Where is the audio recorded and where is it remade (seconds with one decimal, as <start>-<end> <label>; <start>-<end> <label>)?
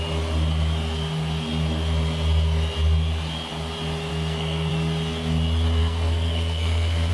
0.0-4.1 recorded; 4.1-4.7 remade; 4.7-5.8 recorded; 5.8-7.1 remade